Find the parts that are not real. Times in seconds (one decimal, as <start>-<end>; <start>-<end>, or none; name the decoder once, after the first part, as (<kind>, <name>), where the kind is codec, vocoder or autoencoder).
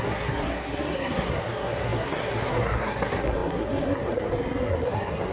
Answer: 0.0-5.3 (codec, SNAC)